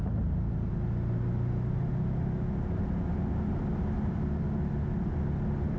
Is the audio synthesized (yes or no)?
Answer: no